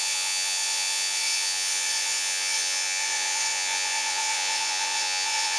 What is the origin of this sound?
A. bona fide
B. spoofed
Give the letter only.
B